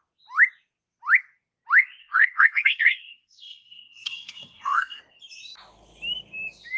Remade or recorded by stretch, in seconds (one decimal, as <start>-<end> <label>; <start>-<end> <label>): 0.0-2.0 recorded; 2.0-5.0 remade; 5.0-6.8 recorded